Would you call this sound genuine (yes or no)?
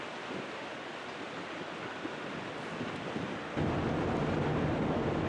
yes